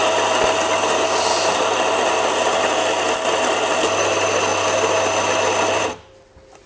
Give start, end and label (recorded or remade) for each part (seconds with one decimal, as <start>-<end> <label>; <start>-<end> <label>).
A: 0.0-6.7 recorded